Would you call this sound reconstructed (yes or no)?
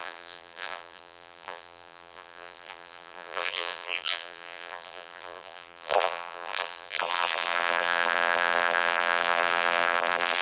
yes